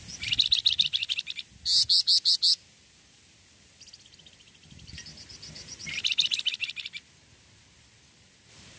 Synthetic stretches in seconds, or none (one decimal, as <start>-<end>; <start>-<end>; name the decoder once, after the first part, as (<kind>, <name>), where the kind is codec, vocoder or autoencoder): none